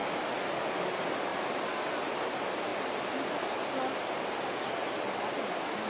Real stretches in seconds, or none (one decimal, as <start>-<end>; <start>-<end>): 0.0-5.9